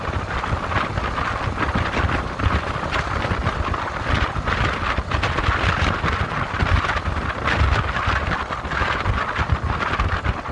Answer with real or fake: real